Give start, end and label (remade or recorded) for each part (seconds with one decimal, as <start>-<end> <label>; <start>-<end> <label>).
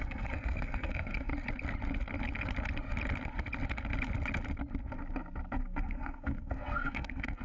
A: 0.0-1.3 remade; 1.3-5.5 recorded; 5.5-7.4 remade